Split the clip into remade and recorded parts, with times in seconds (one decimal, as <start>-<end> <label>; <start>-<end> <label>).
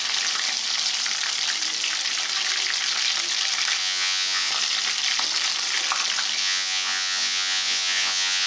0.0-3.8 recorded; 3.8-4.5 remade; 4.5-6.4 recorded; 6.4-8.5 remade